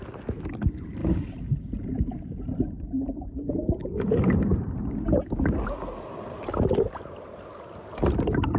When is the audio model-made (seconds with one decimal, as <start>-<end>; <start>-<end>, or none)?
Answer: 1.0-5.0